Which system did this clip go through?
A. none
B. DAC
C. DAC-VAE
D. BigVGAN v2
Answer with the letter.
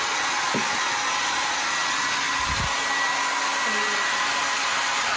A